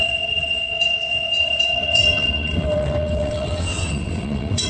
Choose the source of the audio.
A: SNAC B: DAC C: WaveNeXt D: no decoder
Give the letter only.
C